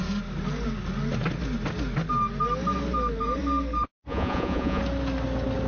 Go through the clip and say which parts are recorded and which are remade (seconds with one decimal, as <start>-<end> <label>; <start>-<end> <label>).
0.0-4.1 recorded; 4.1-4.8 remade; 4.8-5.7 recorded